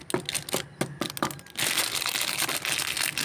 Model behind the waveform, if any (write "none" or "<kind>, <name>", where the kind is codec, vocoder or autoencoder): none